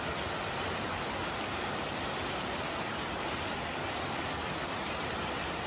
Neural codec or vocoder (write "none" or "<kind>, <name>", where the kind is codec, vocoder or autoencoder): vocoder, BigVGAN v2